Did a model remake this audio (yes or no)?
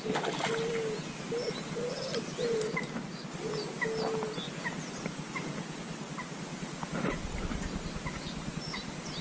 no